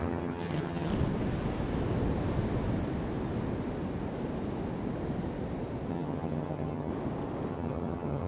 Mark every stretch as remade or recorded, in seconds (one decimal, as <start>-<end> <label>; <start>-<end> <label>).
0.0-0.9 remade; 0.9-5.9 recorded; 5.9-6.9 remade; 6.9-7.5 recorded; 7.5-8.3 remade